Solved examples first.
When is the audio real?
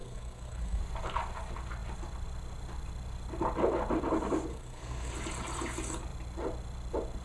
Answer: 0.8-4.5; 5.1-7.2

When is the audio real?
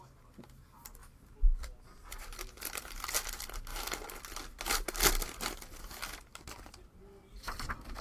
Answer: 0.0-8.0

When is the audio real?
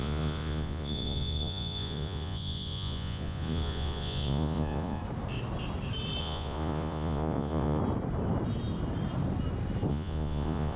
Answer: 5.0-6.2; 7.8-9.9